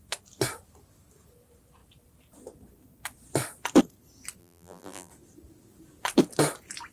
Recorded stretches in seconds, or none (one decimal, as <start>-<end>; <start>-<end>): 0.0-4.4; 5.1-6.9